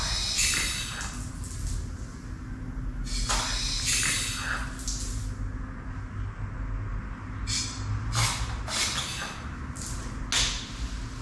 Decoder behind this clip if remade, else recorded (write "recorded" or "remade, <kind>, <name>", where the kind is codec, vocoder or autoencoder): recorded